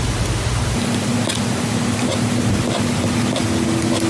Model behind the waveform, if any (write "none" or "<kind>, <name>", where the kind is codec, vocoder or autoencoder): none